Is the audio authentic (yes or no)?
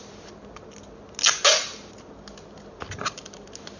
yes